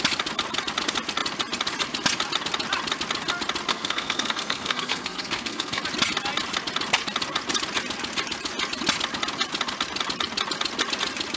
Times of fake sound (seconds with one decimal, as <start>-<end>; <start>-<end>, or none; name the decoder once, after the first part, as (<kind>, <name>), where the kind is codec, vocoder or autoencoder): 3.7-5.8 (codec, SNAC)

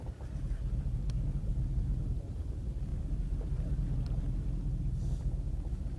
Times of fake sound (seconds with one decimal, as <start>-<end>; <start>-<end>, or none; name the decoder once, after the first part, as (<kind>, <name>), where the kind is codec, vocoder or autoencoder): 2.9-4.2 (vocoder, BigVGAN v2)

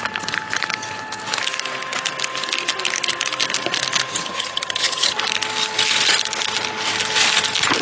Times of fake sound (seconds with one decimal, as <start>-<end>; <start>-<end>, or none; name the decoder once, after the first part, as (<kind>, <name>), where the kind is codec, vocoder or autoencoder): 4.1-5.2 (vocoder, HiFi-GAN)

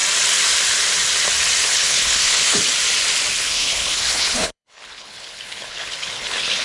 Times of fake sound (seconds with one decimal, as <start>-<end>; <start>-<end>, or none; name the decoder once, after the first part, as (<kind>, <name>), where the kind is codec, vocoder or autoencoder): 1.6-2.6 (codec, HILCodec); 3.4-6.6

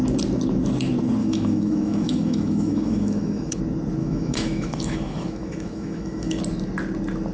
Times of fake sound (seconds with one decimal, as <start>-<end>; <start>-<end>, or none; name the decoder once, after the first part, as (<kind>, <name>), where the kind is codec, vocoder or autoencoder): 1.2-3.6 (autoencoder, DAC-VAE); 4.0-6.4

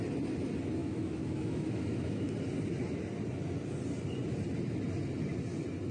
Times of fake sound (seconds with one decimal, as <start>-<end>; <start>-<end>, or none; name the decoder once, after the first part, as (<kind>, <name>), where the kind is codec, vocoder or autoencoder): 0.8-2.3 (autoencoder, DAC-VAE)

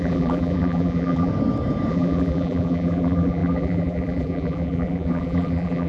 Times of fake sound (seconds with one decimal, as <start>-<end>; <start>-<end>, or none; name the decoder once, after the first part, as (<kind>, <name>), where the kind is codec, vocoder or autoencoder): 0.0-1.3 (vocoder, BigVGAN v2); 1.9-5.9

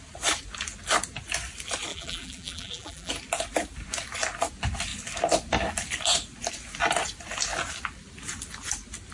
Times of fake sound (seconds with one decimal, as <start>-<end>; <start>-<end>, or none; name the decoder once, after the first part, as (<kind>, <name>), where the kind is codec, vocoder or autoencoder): 1.9-3.1 (vocoder, BigVGAN v2)